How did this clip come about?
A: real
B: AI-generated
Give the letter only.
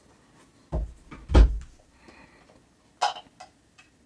A